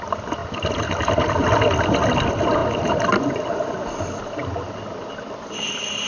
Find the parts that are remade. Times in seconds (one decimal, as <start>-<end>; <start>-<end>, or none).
none